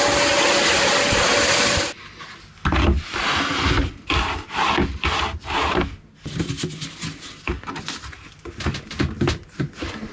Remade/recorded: recorded